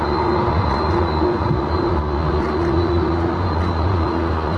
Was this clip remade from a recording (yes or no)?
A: yes